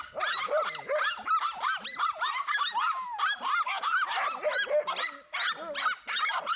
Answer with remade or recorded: recorded